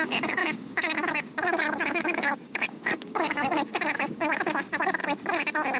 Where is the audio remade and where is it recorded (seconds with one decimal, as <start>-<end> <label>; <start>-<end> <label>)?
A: 0.0-5.0 remade; 5.0-5.8 recorded